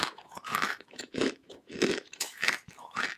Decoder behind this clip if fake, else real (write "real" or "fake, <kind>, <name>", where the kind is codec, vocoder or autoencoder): fake, autoencoder, DAC-VAE